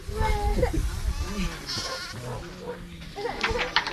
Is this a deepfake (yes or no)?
no